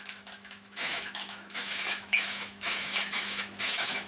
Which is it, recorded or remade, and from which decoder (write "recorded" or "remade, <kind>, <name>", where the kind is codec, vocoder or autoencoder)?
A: remade, autoencoder, DAC-VAE